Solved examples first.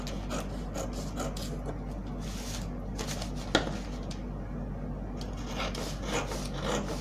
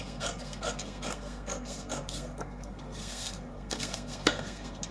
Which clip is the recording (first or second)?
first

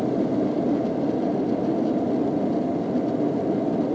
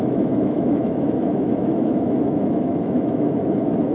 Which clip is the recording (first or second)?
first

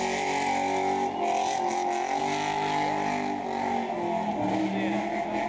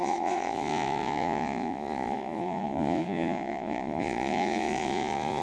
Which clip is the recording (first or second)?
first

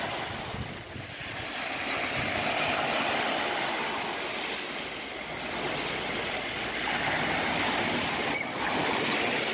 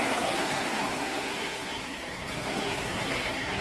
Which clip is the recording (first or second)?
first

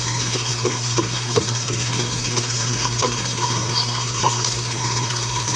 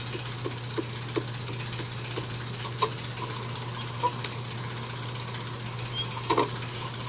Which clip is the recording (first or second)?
second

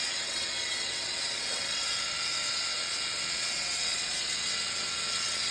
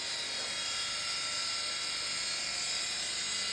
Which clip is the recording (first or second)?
second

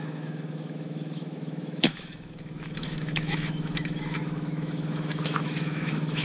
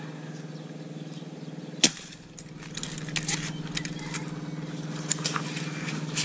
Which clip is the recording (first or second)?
second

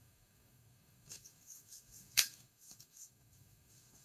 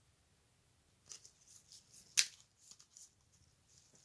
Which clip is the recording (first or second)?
second